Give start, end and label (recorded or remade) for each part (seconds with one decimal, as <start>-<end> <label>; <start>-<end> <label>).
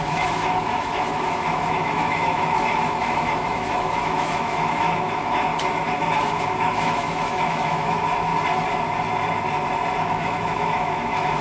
0.0-5.5 remade; 5.5-6.4 recorded; 6.4-8.3 remade; 8.3-10.0 recorded; 10.0-11.4 remade